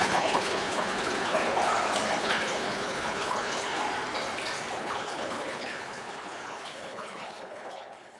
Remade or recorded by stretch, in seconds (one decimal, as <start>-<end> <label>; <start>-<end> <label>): 0.0-1.4 remade; 1.4-2.2 recorded; 2.2-3.8 remade; 3.8-4.8 recorded; 4.8-8.2 remade